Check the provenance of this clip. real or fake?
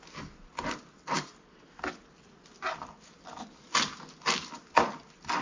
real